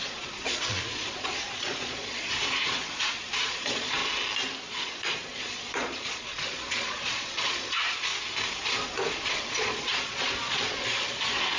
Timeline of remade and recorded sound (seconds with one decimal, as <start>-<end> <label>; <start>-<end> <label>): 0.0-4.0 remade; 4.0-4.7 recorded; 4.7-8.1 remade; 8.1-9.1 recorded; 9.1-11.6 remade